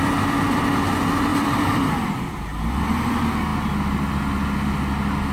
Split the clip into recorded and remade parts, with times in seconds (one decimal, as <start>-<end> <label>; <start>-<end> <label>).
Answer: 0.0-1.3 recorded; 1.3-2.1 remade; 2.1-2.5 recorded; 2.5-3.1 remade; 3.1-5.3 recorded